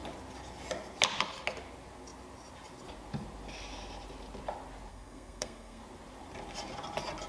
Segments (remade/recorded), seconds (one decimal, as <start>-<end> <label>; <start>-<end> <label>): 0.0-4.9 recorded; 4.9-5.8 remade; 5.8-7.3 recorded